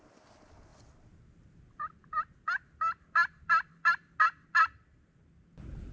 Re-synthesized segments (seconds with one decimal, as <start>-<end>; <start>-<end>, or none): none

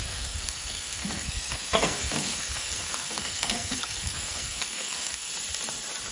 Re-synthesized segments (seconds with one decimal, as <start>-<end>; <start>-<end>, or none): 0.0-5.3